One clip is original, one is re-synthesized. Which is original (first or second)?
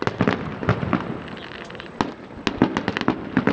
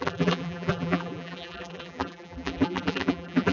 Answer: first